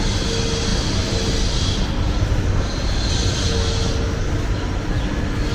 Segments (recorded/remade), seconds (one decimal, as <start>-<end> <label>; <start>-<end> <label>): 0.0-5.5 recorded